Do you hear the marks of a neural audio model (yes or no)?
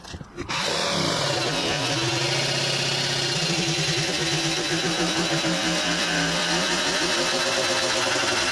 no